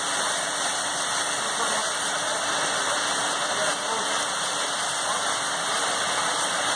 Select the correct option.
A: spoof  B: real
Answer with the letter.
B